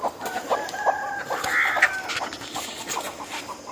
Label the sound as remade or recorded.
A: recorded